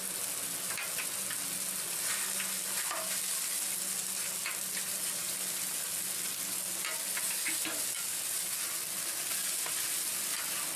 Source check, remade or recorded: recorded